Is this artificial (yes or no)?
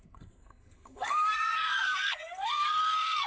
yes